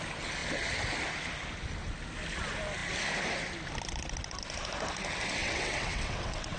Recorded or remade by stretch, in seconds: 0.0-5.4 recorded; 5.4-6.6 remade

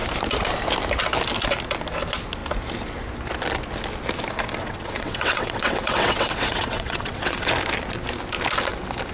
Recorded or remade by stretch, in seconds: 0.0-4.6 recorded; 4.6-7.5 remade; 7.5-9.1 recorded

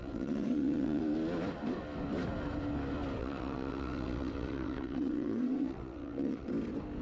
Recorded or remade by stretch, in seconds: 0.0-1.0 remade; 1.0-3.2 recorded; 3.2-6.5 remade; 6.5-7.0 recorded

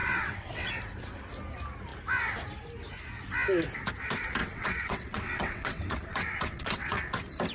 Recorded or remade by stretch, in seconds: 0.0-0.7 remade; 0.7-4.4 recorded; 4.4-7.0 remade; 7.0-7.5 recorded

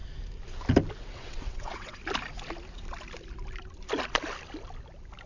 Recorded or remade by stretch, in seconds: 0.0-1.0 recorded; 1.0-2.0 remade; 2.0-5.3 recorded